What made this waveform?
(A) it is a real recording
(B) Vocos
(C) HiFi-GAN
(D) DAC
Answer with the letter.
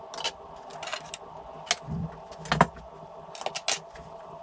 A